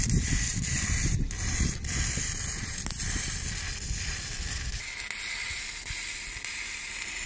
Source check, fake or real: real